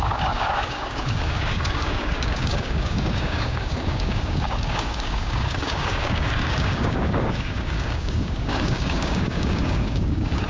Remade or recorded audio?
remade